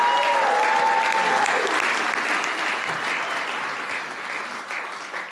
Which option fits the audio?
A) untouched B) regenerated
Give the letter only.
A